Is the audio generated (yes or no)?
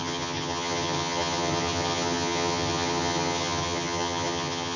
yes